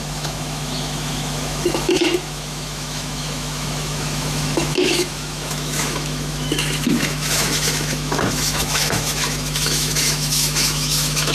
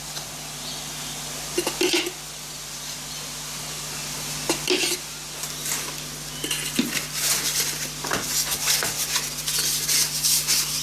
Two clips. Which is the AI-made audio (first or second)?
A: first